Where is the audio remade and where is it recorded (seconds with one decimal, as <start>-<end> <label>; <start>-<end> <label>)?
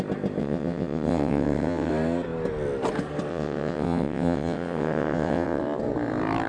0.0-0.4 recorded; 0.4-1.9 remade; 1.9-3.3 recorded; 3.3-5.6 remade; 5.6-6.5 recorded